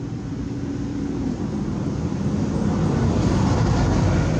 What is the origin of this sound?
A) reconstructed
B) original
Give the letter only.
B